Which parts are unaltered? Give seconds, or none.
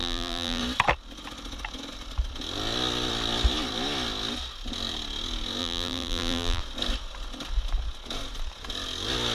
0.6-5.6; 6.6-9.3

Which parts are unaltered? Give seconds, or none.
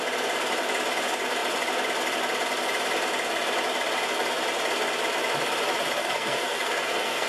0.0-6.0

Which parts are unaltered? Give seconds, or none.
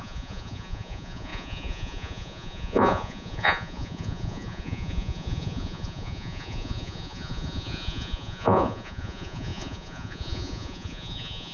none